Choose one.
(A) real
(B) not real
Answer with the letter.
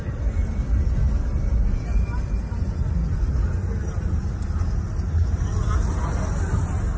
A